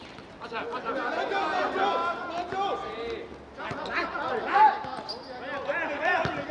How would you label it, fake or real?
real